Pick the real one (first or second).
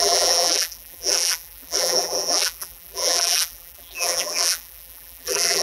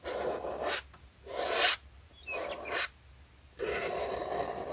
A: second